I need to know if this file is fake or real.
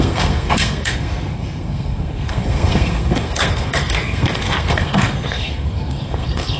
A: fake